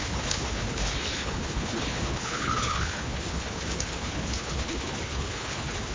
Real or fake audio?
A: fake